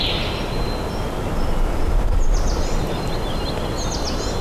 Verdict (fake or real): real